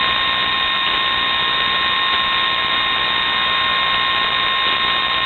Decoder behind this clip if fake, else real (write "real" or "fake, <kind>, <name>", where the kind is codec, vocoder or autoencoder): real